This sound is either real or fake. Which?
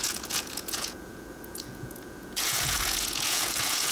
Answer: fake